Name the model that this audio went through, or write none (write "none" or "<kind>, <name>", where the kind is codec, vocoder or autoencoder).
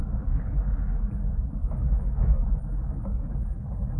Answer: codec, DAC